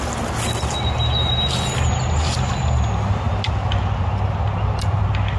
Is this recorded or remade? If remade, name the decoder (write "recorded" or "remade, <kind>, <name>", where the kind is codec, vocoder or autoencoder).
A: recorded